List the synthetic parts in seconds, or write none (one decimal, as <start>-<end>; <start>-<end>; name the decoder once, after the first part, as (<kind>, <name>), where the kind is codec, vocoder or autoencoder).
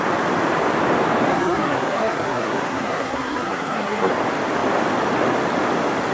1.3-4.1 (codec, SNAC)